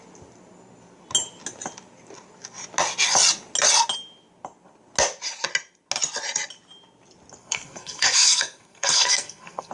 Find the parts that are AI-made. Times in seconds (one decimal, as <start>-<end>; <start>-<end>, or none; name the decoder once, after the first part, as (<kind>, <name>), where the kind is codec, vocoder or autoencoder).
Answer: 7.4-9.7 (codec, SNAC)